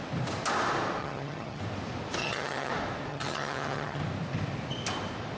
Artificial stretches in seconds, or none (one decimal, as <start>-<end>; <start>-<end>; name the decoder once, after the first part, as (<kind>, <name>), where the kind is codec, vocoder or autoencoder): 1.0-1.6 (vocoder, HiFi-GAN); 2.2-2.7; 3.1-4.0